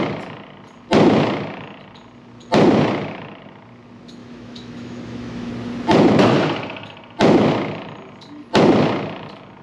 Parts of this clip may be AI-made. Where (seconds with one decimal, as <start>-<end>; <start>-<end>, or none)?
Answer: 4.2-5.5